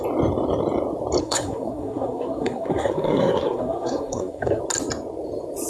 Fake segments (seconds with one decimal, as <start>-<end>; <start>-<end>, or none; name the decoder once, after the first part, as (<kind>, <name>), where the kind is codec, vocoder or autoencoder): 1.2-4.6 (codec, SNAC)